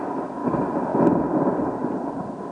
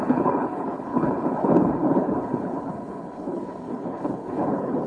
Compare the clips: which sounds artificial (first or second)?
second